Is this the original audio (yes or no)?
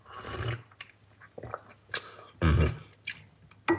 yes